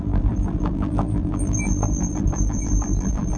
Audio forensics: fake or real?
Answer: fake